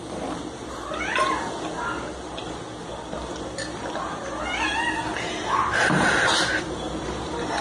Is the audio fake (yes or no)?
no